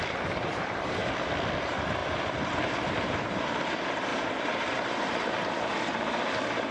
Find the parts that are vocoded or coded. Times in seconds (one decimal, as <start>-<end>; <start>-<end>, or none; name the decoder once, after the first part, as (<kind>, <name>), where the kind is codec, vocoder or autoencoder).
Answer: 0.0-1.0 (vocoder, BigVGAN v2); 1.6-6.7